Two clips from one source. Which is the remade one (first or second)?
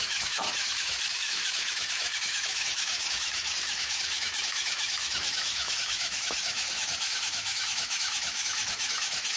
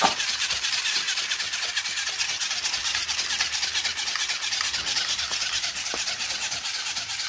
first